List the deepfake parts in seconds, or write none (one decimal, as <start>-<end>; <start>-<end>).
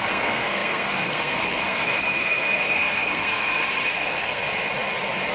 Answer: 0.0-4.4